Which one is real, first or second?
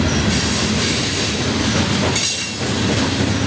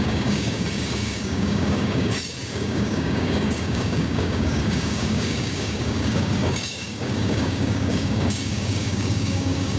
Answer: first